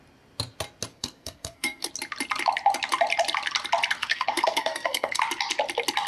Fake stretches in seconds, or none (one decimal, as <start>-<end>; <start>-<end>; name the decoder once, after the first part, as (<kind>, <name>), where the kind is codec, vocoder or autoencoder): 0.9-1.9 (codec, SNAC); 4.0-5.2